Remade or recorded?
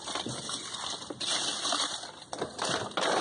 recorded